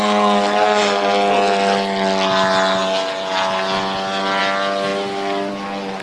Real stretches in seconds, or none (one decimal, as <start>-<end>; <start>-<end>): 0.0-6.0